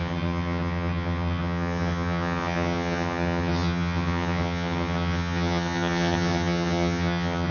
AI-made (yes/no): yes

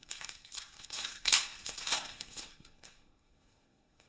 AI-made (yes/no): yes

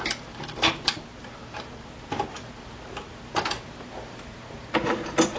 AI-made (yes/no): no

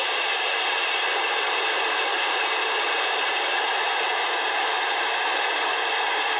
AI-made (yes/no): yes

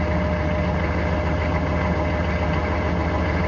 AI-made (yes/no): no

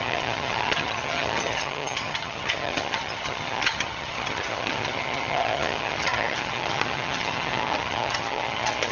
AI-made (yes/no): yes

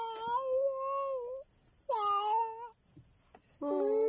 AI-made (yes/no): no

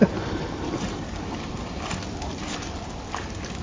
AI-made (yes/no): yes